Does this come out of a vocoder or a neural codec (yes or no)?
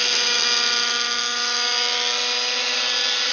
no